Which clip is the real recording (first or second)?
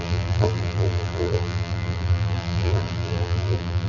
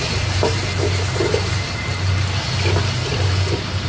second